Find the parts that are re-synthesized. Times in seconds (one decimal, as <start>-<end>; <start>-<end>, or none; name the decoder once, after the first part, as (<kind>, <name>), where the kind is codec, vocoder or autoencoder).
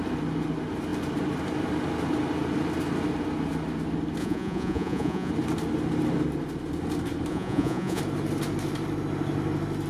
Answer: 4.2-5.3 (vocoder, Vocos); 7.3-8.0